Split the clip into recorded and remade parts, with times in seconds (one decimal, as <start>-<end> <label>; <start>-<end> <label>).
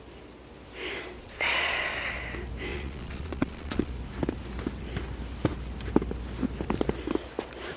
0.0-1.2 recorded; 1.2-1.9 remade; 1.9-2.7 recorded; 2.7-3.9 remade; 3.9-7.8 recorded